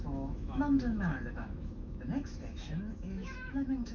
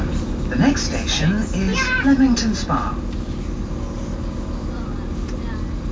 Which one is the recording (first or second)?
second